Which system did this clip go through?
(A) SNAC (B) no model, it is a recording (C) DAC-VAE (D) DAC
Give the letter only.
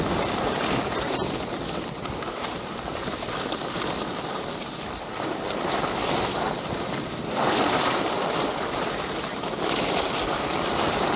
B